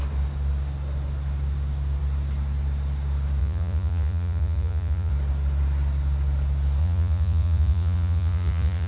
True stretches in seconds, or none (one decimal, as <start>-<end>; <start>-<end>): 0.0-3.4; 5.1-6.8

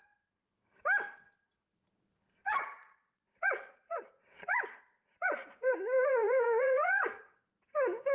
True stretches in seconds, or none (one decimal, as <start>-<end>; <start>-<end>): 0.0-2.4; 7.3-8.1

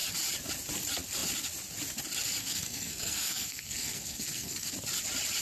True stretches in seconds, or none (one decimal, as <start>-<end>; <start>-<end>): 0.0-2.4; 4.7-5.4